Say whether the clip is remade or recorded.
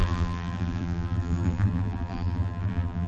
remade